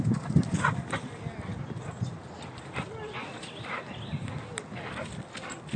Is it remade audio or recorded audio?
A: recorded